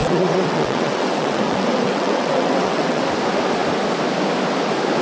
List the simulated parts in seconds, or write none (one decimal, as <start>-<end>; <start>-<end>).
0.0-3.0